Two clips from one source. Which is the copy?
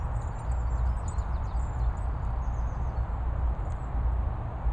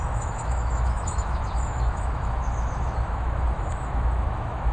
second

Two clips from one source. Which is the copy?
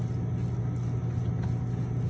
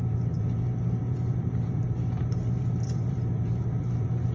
second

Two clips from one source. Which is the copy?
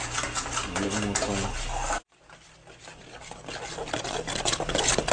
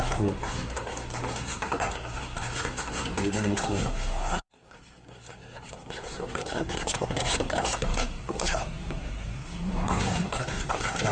second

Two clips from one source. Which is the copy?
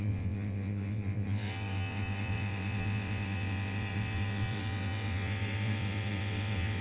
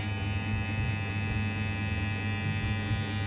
first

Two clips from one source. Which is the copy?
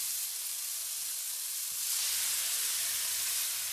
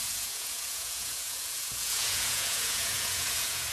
second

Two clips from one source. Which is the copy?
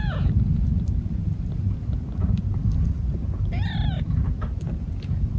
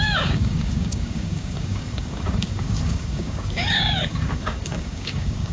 second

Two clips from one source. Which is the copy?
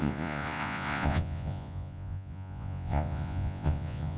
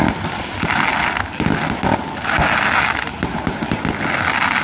first